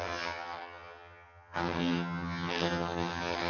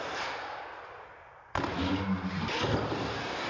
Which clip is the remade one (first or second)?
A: first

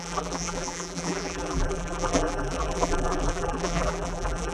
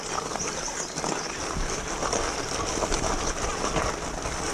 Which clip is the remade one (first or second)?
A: first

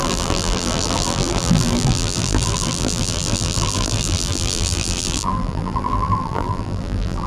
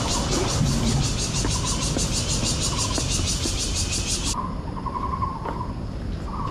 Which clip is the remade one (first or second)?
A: first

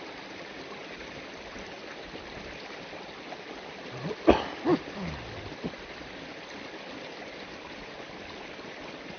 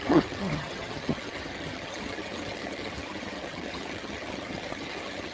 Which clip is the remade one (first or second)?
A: second